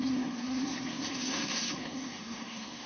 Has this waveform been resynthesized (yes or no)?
yes